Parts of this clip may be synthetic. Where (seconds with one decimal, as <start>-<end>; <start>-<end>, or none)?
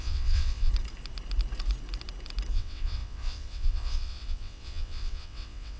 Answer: 0.0-0.7; 2.5-5.8